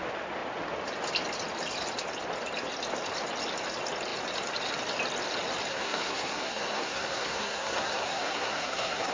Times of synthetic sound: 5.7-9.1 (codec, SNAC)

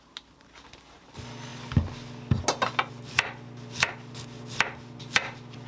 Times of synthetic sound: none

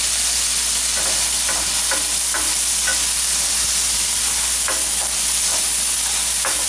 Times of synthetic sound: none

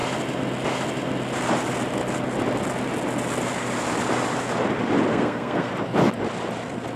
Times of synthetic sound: 5.1-5.7 (codec, SNAC)

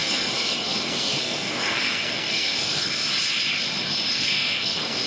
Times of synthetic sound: 0.0-3.0 (codec, SNAC); 4.1-5.1

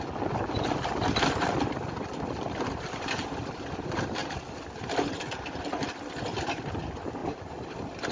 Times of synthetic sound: none

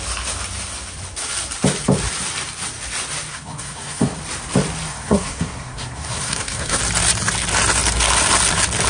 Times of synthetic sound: 3.3-4.2 (codec, SNAC); 4.9-6.8